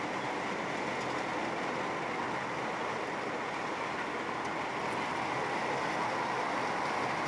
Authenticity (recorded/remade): recorded